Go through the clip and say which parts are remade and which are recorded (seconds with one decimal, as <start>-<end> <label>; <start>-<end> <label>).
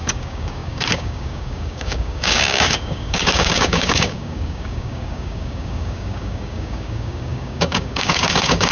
0.0-8.7 remade